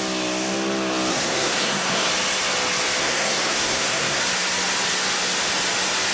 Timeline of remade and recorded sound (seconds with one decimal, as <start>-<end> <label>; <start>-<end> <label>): 0.0-1.1 recorded; 1.1-2.1 remade; 2.1-3.0 recorded; 3.0-4.2 remade; 4.2-6.1 recorded